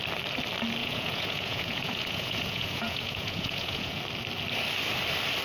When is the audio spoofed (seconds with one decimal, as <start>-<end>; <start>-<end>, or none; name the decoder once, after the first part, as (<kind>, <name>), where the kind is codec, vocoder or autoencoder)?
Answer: 0.8-4.0 (vocoder, Vocos)